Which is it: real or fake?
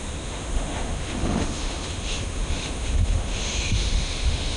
fake